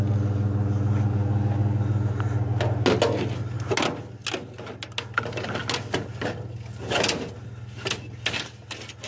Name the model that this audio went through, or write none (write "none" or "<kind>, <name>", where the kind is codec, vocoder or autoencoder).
none